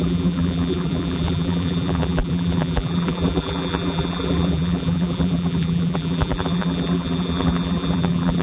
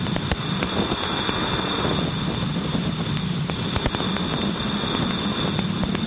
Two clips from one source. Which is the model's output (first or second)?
first